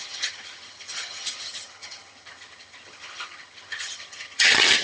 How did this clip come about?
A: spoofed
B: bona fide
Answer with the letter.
A